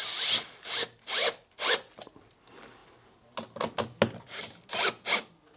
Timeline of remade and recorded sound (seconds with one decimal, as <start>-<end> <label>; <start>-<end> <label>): 0.0-5.6 recorded

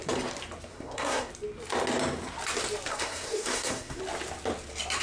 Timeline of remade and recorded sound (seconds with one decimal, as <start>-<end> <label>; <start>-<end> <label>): 0.0-0.7 recorded; 0.7-1.3 remade; 1.3-2.9 recorded; 2.9-4.0 remade; 4.0-5.0 recorded

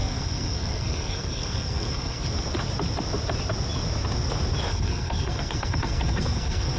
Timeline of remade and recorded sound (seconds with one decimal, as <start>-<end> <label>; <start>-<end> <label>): 0.0-2.3 remade; 2.3-4.7 recorded; 4.7-6.8 remade

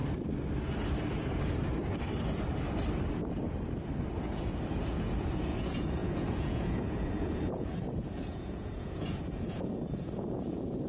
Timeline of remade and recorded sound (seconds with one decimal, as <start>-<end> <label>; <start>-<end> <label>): 0.0-4.2 recorded; 4.2-10.9 remade

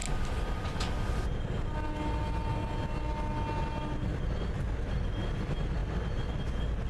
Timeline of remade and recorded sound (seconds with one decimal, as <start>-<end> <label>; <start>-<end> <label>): 0.0-6.9 recorded

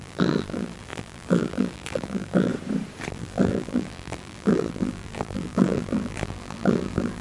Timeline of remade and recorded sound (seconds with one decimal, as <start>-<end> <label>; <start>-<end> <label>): 0.0-2.5 remade; 2.5-3.1 recorded; 3.1-7.2 remade

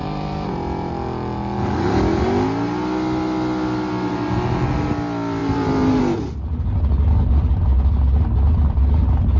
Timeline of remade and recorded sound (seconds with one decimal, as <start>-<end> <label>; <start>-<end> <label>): 0.0-0.9 remade; 0.9-5.4 recorded; 5.4-6.0 remade; 6.0-9.4 recorded

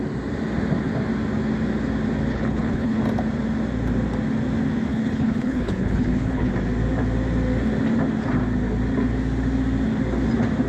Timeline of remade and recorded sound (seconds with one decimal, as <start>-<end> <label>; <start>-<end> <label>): 0.0-2.3 recorded; 2.3-3.0 remade; 3.0-4.9 recorded; 4.9-6.5 remade; 6.5-10.7 recorded